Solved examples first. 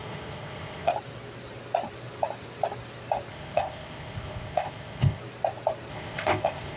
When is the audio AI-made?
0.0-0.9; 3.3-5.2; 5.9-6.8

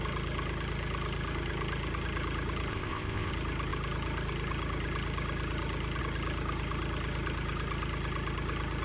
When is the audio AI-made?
2.7-3.3

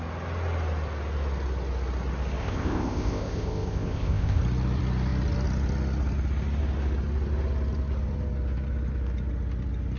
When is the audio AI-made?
2.4-4.4

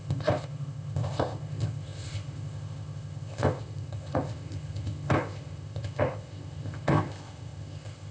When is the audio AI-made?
0.0-8.1

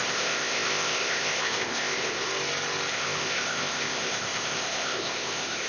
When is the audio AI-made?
0.0-2.3; 2.9-5.7

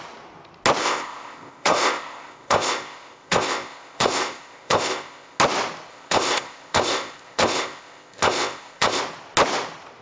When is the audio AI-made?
0.8-5.4; 5.9-9.0